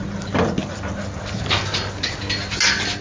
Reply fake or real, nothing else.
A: real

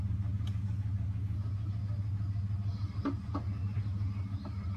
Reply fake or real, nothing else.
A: real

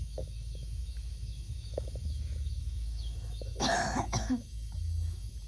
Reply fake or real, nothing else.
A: fake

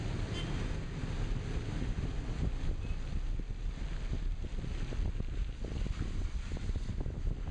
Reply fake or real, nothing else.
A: real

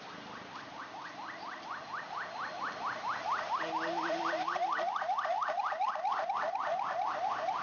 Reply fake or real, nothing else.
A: real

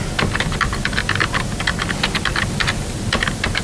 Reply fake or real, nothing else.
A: real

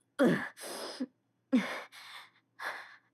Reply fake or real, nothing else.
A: real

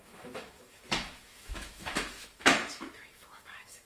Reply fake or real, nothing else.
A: fake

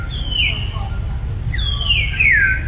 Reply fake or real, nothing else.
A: real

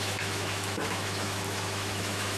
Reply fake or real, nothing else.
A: fake